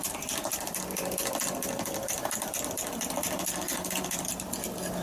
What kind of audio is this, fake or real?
fake